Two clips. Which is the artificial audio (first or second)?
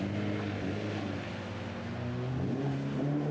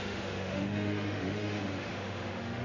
second